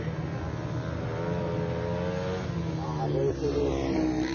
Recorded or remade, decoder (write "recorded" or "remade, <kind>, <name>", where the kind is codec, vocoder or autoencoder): recorded